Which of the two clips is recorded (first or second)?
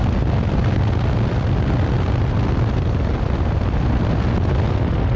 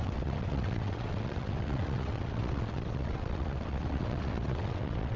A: first